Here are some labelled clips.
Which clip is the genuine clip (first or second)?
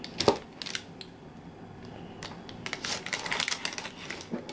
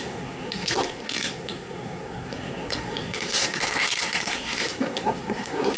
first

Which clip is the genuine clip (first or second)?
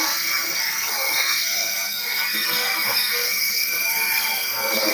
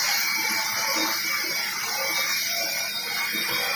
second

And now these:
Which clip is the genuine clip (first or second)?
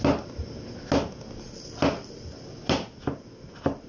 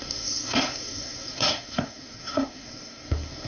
first